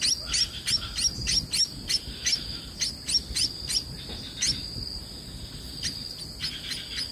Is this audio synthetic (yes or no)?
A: no